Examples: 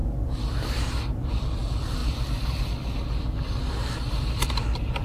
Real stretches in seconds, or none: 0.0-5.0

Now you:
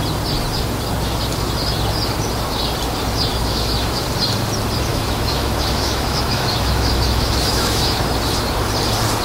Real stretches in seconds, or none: 0.0-3.3; 4.0-4.9; 8.0-9.2

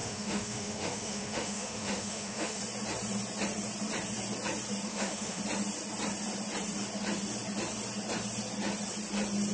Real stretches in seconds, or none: 2.6-4.9; 5.4-9.5